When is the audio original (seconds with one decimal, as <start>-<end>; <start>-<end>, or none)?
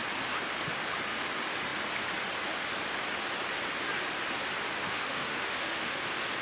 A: 0.0-4.8; 6.0-6.4